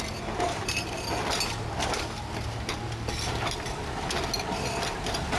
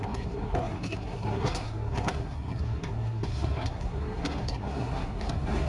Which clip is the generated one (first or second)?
second